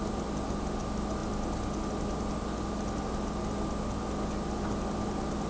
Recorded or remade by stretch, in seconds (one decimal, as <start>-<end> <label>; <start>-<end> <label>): 0.0-5.5 recorded